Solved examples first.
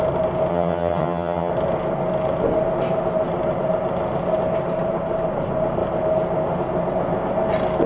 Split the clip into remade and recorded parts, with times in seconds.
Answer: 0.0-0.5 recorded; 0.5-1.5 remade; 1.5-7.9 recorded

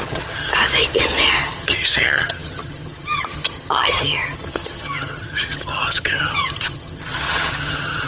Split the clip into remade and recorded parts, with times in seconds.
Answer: 0.0-0.5 remade; 0.5-1.4 recorded; 1.4-8.1 remade

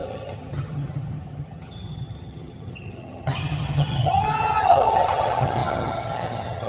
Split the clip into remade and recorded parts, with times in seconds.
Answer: 0.0-6.7 remade